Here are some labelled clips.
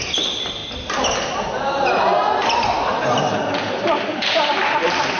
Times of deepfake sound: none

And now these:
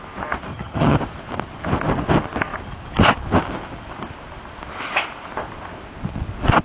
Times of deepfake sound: 0.5-1.0 (vocoder, HiFi-GAN)